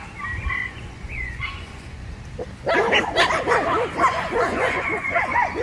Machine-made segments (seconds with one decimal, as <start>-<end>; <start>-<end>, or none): 0.6-2.2; 4.1-5.6